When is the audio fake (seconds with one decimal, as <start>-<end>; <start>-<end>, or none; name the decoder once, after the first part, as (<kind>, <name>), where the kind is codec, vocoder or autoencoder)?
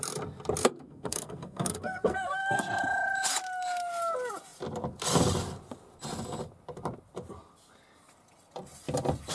0.6-2.6 (codec, SNAC)